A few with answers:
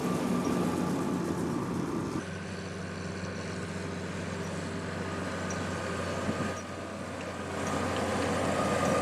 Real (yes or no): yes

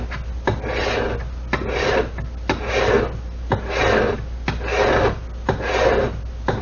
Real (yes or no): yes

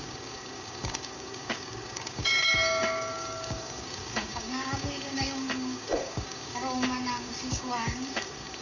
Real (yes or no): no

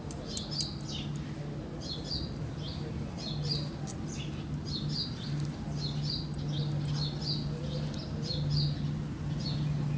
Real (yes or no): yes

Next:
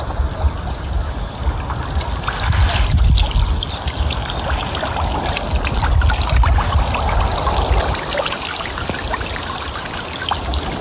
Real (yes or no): yes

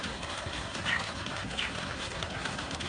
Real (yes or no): no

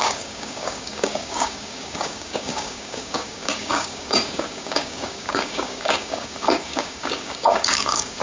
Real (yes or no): no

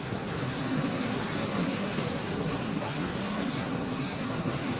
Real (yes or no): no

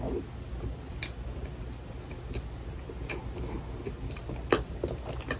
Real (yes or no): yes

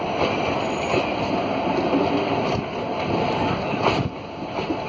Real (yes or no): yes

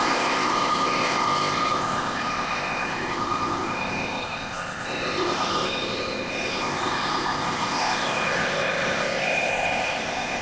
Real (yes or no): no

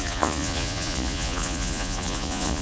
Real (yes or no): no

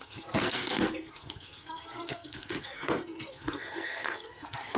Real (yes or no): no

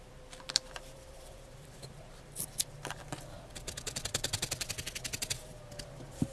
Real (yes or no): no